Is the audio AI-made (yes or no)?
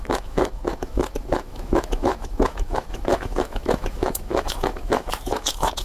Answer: yes